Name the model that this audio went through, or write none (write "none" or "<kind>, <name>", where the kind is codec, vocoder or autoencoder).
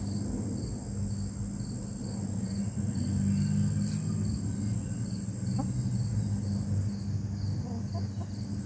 none